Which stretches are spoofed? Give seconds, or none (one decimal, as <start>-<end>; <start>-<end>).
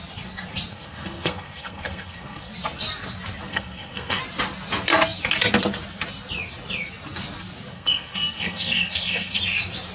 0.7-2.5; 3.5-4.2; 7.7-9.4